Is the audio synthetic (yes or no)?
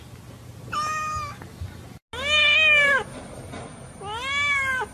no